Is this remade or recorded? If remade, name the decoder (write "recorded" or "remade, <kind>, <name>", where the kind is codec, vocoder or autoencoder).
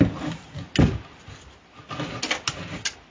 recorded